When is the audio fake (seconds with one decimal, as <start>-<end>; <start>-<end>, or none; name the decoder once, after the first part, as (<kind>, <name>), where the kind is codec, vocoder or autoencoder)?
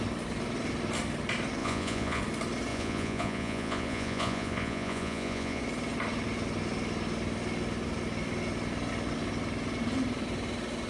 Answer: 1.6-2.2 (vocoder, Vocos); 2.7-5.6